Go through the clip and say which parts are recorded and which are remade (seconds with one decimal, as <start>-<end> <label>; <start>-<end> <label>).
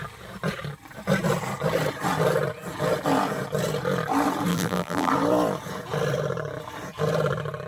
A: 0.0-4.5 recorded; 4.5-5.1 remade; 5.1-7.7 recorded